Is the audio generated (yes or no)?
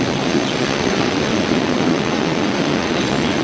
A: yes